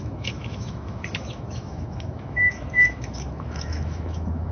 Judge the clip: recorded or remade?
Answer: remade